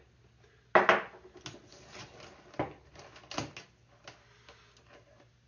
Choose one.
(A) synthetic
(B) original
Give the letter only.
B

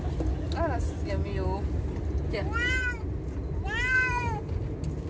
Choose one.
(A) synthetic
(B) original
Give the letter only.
B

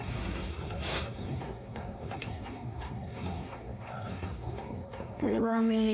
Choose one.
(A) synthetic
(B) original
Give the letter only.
A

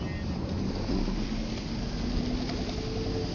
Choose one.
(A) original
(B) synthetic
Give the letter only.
A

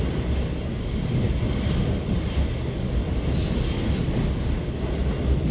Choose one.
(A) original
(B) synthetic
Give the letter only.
A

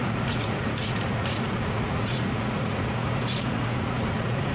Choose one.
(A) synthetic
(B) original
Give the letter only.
A